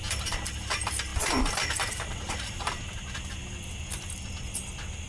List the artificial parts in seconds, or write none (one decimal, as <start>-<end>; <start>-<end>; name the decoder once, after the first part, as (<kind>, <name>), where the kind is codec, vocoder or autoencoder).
1.1-2.8 (vocoder, BigVGAN v2)